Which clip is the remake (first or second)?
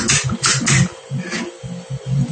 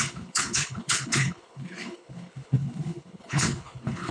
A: second